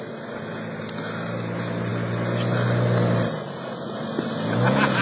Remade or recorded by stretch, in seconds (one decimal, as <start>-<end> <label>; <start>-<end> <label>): 0.0-5.0 recorded